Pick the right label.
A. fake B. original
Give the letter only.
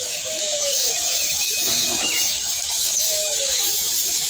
A